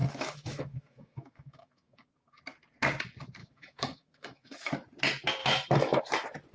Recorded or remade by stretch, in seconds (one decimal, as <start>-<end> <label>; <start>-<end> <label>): 0.0-2.4 remade; 2.4-3.4 recorded; 3.4-4.7 remade; 4.7-5.4 recorded; 5.4-6.0 remade; 6.0-6.5 recorded